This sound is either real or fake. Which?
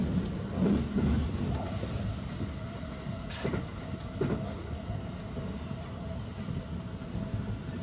real